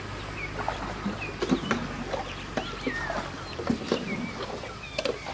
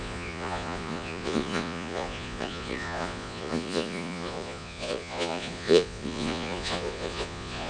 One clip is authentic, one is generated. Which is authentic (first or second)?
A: first